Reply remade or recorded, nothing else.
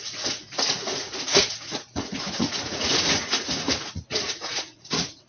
remade